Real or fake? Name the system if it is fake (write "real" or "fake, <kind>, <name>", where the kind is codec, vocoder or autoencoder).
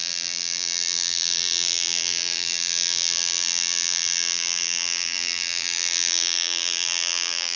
fake, vocoder, BigVGAN v2